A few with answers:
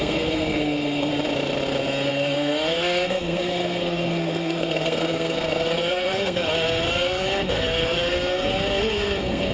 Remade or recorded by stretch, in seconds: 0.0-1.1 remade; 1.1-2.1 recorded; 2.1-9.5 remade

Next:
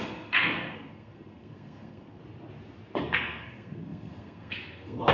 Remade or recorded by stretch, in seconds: 0.0-2.2 remade; 2.2-3.0 recorded; 3.0-5.1 remade

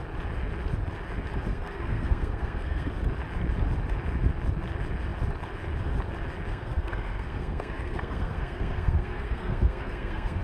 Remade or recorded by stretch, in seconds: 0.0-1.5 recorded; 1.5-2.9 remade; 2.9-6.5 recorded; 6.5-10.4 remade

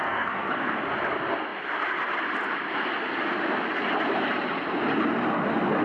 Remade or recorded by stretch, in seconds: 0.0-0.8 remade; 0.8-5.8 recorded

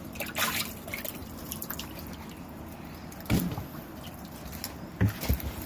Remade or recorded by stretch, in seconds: 0.0-5.7 recorded

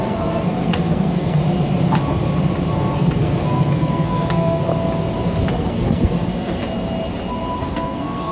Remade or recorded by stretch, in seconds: 0.0-1.4 remade; 1.4-2.7 recorded; 2.7-4.7 remade; 4.7-5.5 recorded; 5.5-6.6 remade; 6.6-7.6 recorded; 7.6-8.3 remade

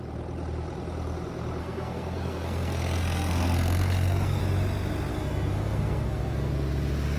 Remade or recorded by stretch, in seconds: 0.0-1.6 recorded; 1.6-4.4 remade; 4.4-5.1 recorded; 5.1-6.5 remade; 6.5-7.2 recorded